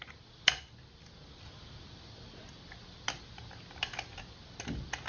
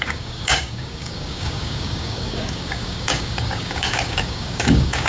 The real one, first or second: first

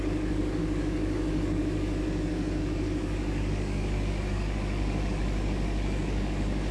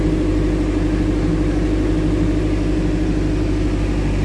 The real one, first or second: second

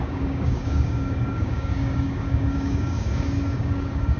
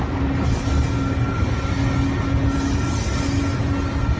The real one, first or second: second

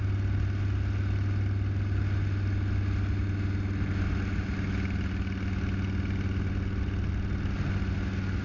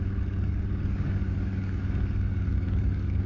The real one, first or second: first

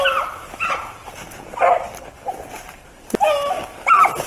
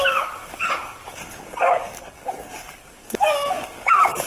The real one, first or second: first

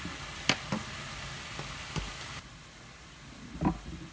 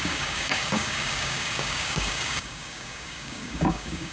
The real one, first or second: first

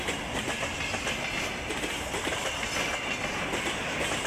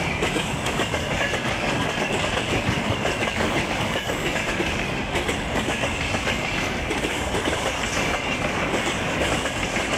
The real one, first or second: first